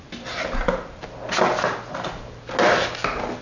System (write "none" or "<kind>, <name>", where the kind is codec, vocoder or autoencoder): none